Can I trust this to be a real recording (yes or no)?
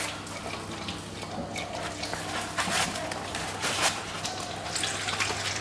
yes